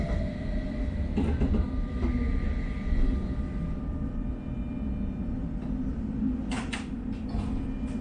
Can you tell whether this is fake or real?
real